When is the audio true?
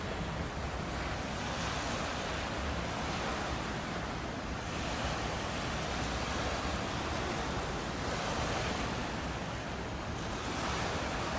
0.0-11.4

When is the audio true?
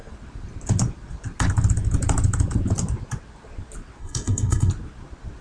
0.0-4.0; 4.7-5.4